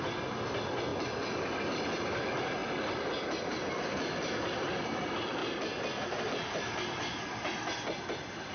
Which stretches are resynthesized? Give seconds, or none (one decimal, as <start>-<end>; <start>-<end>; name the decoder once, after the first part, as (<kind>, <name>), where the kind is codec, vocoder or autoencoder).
none